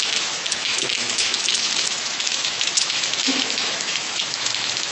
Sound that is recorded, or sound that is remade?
remade